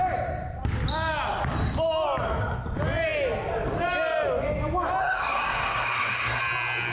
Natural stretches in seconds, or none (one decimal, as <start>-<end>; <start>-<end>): 0.0-5.0; 6.4-6.9